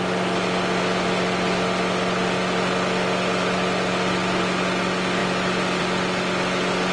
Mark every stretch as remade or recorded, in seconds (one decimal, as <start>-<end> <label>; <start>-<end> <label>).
0.0-6.9 recorded